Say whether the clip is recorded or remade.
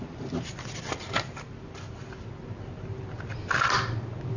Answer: recorded